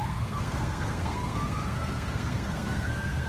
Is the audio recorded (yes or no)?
no